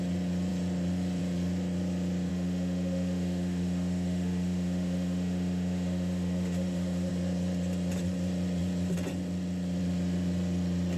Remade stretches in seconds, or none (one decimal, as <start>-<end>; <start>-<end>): 2.3-7.1

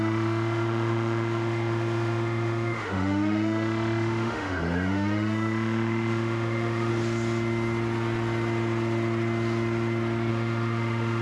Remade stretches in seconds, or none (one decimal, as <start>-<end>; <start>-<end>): 0.0-6.9; 10.3-11.2